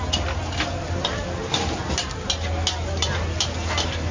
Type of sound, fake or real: real